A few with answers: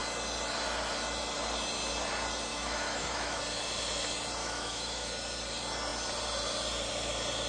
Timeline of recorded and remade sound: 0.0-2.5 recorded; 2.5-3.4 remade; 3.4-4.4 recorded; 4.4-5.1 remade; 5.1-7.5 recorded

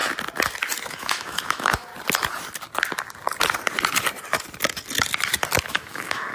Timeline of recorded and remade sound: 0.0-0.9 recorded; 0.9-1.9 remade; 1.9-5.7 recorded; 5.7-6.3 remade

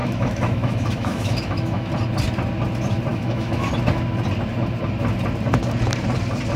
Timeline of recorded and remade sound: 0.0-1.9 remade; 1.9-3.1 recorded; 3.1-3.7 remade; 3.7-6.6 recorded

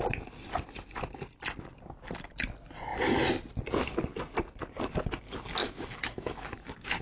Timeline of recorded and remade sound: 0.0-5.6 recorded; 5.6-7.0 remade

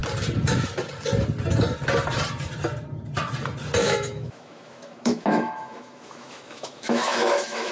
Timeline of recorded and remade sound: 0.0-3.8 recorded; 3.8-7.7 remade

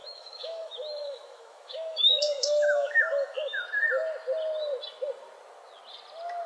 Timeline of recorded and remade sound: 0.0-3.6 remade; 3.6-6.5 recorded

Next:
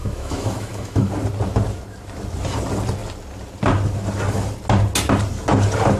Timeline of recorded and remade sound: 0.0-1.1 remade; 1.1-6.0 recorded